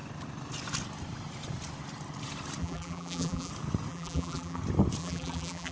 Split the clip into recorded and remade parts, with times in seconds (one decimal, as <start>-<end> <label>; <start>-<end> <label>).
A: 0.0-2.6 recorded; 2.6-3.5 remade; 3.5-3.9 recorded; 3.9-4.6 remade; 4.6-5.0 recorded; 5.0-5.7 remade